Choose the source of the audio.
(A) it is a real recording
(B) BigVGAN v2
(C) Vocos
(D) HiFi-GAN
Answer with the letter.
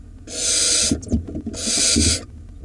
A